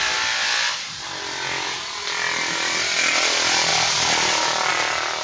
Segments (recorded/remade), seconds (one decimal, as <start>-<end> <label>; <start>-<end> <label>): 0.0-5.2 recorded